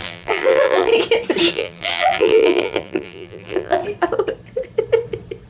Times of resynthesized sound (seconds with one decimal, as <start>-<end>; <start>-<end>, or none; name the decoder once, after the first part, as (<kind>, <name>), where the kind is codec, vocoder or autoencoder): 0.0-0.9 (vocoder, BigVGAN v2); 1.5-3.8